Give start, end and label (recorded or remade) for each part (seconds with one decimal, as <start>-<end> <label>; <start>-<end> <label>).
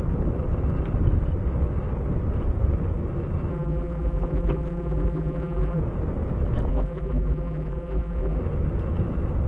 0.0-3.5 recorded; 3.5-5.8 remade; 5.8-6.7 recorded; 6.7-8.4 remade; 8.4-9.5 recorded